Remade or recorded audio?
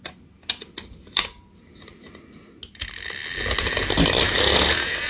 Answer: recorded